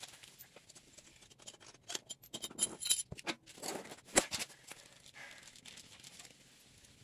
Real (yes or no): yes